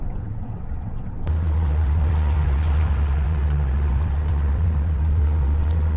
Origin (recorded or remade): remade